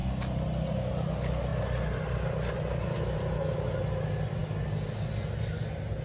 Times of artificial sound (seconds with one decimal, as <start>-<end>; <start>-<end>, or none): none